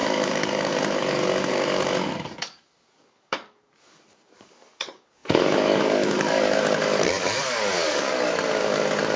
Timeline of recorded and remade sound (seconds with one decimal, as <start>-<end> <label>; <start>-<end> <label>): 0.0-9.2 remade